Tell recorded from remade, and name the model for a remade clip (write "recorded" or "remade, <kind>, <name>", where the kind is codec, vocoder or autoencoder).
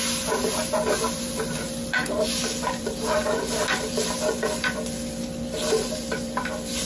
remade, vocoder, BigVGAN v2